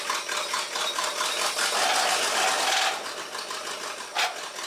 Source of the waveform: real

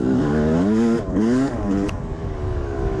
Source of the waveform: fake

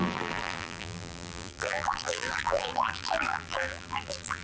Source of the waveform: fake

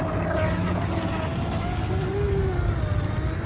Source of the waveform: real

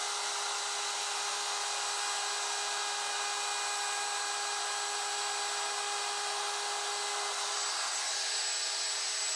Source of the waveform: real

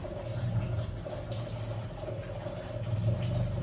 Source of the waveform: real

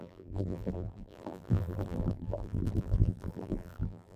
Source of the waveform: fake